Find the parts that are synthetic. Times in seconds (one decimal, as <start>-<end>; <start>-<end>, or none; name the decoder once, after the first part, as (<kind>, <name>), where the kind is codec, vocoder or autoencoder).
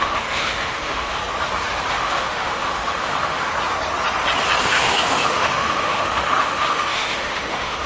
0.0-1.2 (autoencoder, DAC-VAE); 1.9-3.5; 4.6-7.9